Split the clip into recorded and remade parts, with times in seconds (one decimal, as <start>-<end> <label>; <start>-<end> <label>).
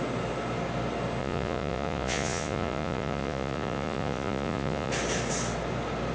0.0-1.2 recorded; 1.2-4.9 remade; 4.9-6.1 recorded